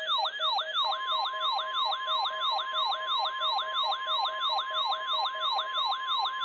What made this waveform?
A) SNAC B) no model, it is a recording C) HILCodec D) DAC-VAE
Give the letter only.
B